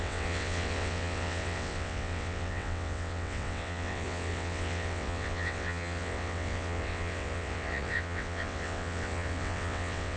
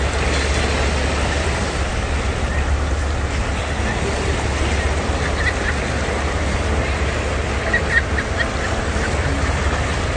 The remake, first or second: first